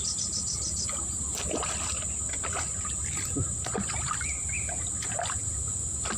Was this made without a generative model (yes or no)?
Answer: yes